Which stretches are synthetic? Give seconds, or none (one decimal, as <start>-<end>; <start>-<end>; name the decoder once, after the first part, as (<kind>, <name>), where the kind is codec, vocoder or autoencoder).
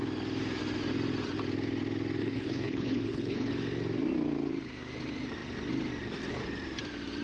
2.2-3.5 (codec, HILCodec)